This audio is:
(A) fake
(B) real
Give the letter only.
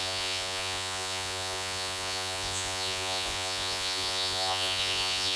A